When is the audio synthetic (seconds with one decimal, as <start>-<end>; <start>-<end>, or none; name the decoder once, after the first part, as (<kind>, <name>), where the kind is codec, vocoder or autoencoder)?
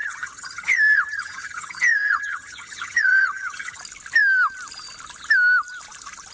0.0-3.8 (vocoder, HiFi-GAN)